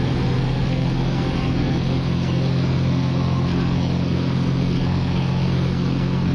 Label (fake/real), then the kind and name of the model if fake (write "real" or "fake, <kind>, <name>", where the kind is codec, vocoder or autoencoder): fake, codec, SNAC